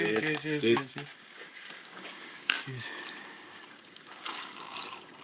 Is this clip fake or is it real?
fake